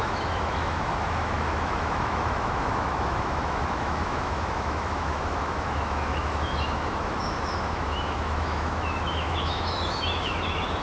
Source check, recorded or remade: remade